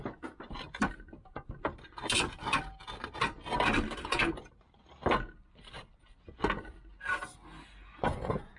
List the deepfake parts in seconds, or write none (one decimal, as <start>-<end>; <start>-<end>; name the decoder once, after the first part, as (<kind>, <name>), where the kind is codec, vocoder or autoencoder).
none